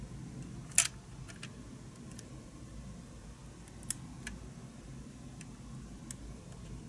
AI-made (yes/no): no